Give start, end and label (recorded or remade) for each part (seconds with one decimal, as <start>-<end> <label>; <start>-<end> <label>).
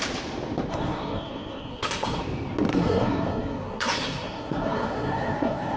0.0-0.7 recorded; 0.7-2.2 remade; 2.2-2.7 recorded; 2.7-5.8 remade